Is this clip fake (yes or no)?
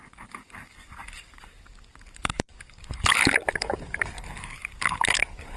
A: yes